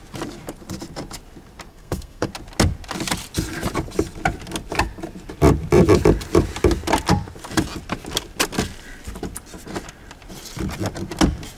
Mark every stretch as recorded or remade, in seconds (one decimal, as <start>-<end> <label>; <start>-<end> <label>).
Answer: 0.0-1.7 recorded; 1.7-2.3 remade; 2.3-11.6 recorded